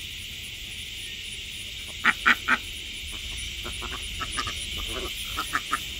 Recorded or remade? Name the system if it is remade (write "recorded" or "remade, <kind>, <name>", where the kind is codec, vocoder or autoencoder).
recorded